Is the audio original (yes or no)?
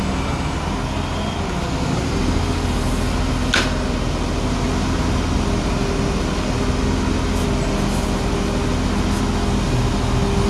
yes